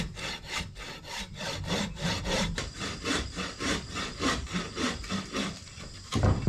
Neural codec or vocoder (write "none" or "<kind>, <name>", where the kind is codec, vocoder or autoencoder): vocoder, BigVGAN v2